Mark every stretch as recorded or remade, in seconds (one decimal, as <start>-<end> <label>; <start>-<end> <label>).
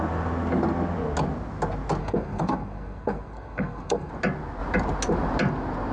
0.0-2.0 recorded; 2.0-4.1 remade; 4.1-5.9 recorded